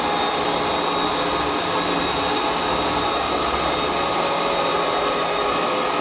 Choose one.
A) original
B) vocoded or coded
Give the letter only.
A